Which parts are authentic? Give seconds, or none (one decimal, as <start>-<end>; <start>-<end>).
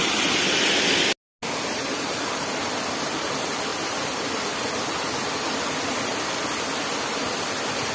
0.0-3.7; 4.3-7.9